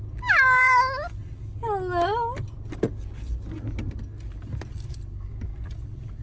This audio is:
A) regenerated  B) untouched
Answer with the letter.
B